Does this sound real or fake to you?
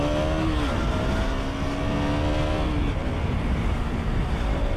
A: real